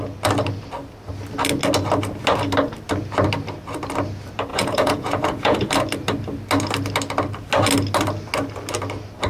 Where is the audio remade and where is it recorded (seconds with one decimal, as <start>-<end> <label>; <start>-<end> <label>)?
0.0-4.5 recorded; 4.5-5.7 remade; 5.7-9.3 recorded